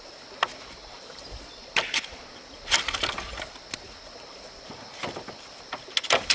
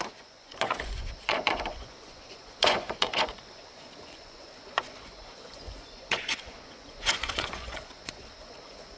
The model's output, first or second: second